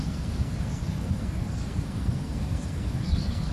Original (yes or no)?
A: no